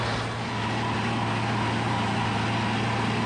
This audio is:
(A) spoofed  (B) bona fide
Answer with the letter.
B